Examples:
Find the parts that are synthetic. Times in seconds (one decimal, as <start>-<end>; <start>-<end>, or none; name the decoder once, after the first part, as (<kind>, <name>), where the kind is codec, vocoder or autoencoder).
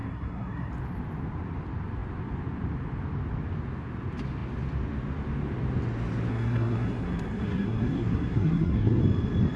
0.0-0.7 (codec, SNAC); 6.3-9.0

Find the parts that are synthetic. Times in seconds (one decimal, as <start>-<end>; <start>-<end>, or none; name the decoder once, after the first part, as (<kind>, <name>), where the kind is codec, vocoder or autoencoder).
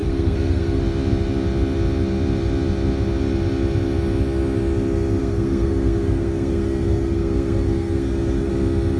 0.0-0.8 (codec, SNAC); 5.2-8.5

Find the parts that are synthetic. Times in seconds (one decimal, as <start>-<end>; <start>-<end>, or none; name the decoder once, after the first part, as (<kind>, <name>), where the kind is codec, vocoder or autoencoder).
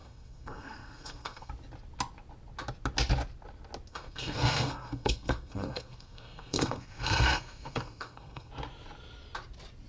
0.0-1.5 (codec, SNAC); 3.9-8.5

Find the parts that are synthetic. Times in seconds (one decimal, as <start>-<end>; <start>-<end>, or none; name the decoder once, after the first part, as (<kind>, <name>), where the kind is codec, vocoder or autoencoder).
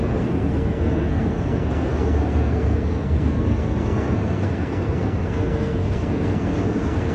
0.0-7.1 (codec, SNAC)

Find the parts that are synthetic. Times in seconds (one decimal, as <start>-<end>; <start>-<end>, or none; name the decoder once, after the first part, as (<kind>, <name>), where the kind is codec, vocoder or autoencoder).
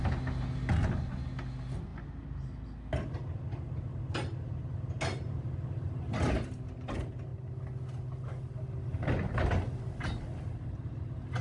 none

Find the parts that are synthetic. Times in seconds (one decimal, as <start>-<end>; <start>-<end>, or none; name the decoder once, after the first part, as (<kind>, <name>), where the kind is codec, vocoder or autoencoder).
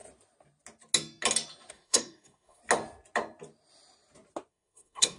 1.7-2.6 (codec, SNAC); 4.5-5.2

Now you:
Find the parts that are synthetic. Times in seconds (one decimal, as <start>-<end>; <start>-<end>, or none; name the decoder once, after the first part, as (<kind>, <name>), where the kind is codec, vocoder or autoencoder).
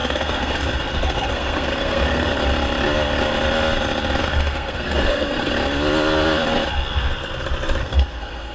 0.0-2.3 (codec, SNAC); 4.2-5.5; 7.8-8.5